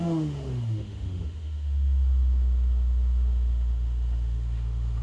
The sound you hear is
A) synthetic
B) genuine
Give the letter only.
A